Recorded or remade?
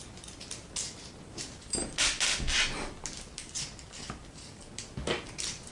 recorded